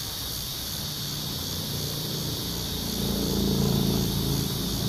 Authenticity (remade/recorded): remade